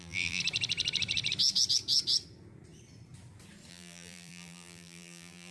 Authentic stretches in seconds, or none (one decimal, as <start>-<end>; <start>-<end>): 0.4-3.7